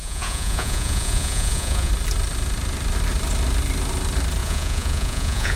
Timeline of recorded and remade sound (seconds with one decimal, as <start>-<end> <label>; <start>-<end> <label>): 0.0-1.9 remade; 1.9-4.4 recorded; 4.4-5.6 remade